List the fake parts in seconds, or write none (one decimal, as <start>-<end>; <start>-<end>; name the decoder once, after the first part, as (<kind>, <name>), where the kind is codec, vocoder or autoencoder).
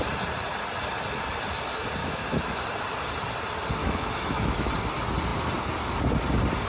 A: 2.0-2.6 (autoencoder, DAC-VAE); 3.8-4.7